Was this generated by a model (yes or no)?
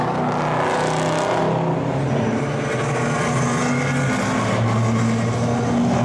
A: no